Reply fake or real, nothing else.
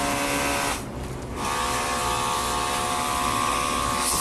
real